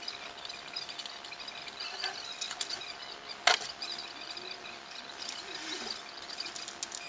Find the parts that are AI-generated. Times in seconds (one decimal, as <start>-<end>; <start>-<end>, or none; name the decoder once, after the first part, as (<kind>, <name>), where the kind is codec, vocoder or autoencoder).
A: none

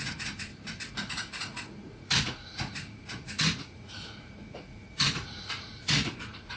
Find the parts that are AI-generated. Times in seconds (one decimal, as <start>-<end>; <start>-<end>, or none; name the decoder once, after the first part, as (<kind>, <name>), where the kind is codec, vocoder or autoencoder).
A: 0.0-0.5 (vocoder, Vocos); 1.1-6.6

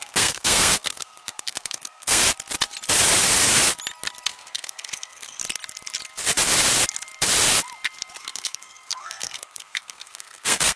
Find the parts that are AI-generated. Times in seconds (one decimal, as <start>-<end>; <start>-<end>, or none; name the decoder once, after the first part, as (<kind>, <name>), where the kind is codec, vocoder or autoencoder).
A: 0.0-2.2 (codec, SNAC); 4.3-5.4; 8.2-10.8

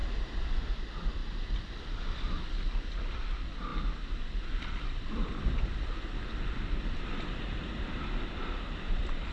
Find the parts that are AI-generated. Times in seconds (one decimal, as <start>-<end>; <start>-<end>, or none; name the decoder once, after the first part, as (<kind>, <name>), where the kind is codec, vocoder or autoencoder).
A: 0.0-3.7 (vocoder, BigVGAN v2); 4.7-9.3

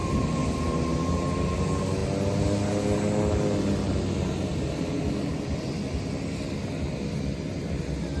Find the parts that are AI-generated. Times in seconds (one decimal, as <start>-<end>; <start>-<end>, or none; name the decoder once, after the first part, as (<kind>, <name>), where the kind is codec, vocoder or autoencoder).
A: none

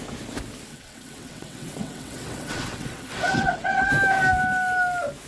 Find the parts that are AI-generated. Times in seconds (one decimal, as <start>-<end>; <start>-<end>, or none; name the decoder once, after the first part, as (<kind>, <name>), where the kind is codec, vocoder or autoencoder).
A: 0.7-3.9 (vocoder, WaveNeXt)